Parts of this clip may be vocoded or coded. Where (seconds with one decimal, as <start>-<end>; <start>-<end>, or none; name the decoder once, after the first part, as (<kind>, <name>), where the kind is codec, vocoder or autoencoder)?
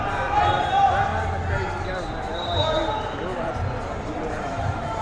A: 0.0-1.1 (vocoder, BigVGAN v2); 4.1-5.0